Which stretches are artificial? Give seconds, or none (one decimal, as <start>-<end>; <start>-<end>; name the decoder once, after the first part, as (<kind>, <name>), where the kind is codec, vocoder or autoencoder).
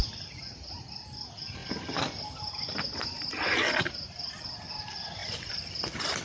5.2-6.2 (vocoder, BigVGAN v2)